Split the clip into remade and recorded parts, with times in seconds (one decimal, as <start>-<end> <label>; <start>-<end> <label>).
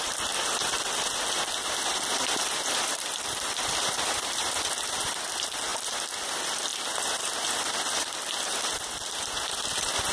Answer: 0.0-10.1 recorded